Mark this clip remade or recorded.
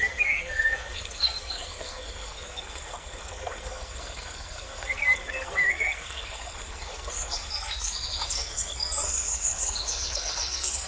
remade